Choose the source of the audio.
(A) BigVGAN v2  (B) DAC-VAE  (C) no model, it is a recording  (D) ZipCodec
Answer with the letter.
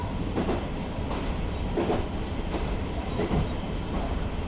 A